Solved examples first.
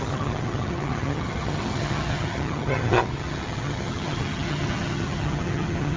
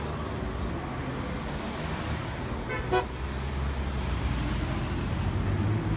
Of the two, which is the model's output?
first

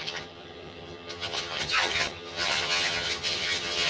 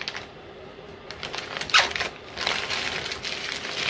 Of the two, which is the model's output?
first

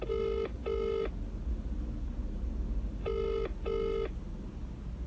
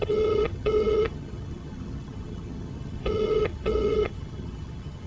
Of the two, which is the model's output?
second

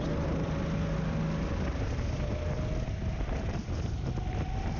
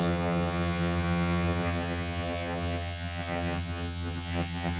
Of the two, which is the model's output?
second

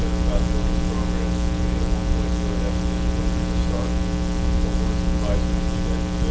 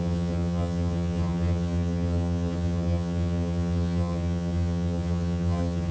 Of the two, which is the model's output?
second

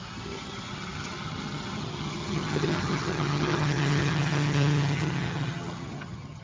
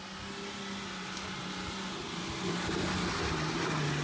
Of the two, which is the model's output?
first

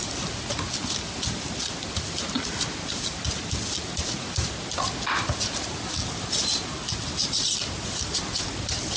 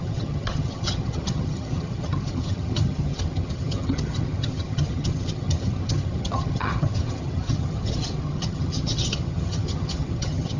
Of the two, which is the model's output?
second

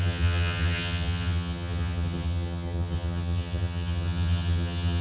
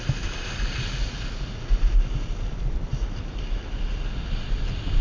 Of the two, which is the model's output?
first